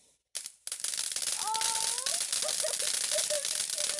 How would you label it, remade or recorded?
recorded